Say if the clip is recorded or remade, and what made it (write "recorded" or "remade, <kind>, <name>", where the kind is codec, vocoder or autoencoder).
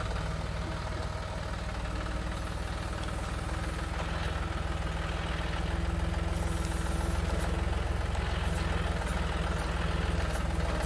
recorded